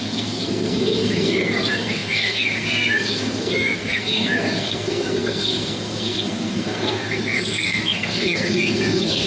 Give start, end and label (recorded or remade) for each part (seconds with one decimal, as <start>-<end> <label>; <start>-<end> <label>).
0.0-9.3 remade